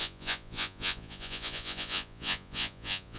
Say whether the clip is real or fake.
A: fake